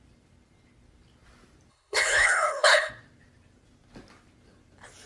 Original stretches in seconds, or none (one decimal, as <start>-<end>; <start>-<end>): 0.0-1.7; 2.9-5.1